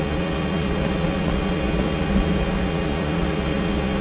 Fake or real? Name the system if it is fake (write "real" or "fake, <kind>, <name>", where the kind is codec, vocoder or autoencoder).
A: fake, vocoder, Vocos